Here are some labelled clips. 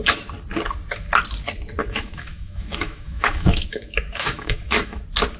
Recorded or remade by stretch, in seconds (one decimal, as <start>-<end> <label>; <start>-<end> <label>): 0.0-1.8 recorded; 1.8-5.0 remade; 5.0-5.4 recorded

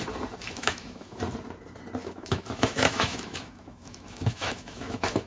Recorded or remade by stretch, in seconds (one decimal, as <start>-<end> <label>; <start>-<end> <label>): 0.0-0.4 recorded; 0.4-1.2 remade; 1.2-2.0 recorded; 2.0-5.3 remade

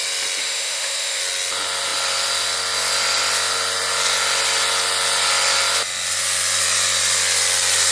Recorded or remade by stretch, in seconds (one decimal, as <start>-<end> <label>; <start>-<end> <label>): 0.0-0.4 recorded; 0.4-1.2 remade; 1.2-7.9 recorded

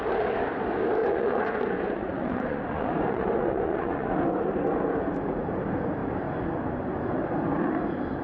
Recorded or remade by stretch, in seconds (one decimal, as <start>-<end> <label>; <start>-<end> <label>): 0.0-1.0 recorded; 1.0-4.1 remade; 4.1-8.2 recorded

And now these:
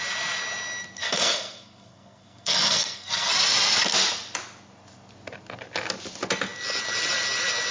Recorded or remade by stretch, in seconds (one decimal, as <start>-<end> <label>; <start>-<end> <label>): 0.0-1.0 recorded; 1.0-3.3 remade; 3.3-7.7 recorded